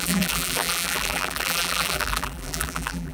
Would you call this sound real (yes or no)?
no